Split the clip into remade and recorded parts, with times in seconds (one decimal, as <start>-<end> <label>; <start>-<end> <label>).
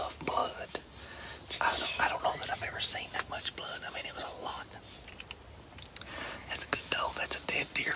0.0-0.4 recorded; 0.4-0.9 remade; 0.9-6.4 recorded; 6.4-7.1 remade; 7.1-8.0 recorded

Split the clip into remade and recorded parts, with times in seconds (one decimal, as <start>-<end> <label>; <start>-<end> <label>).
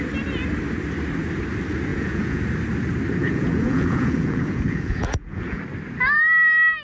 0.0-1.9 recorded; 1.9-2.4 remade; 2.4-3.2 recorded; 3.2-5.6 remade; 5.6-6.8 recorded